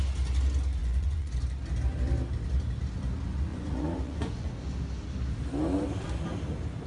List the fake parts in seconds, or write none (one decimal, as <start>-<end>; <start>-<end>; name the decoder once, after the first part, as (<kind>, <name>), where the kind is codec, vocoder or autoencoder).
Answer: 0.8-1.4 (vocoder, Vocos); 3.5-4.5